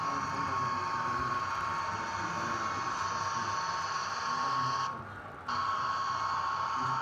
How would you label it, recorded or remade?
recorded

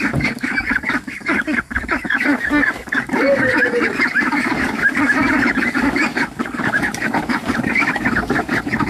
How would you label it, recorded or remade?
remade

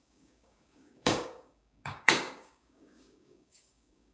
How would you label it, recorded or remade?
remade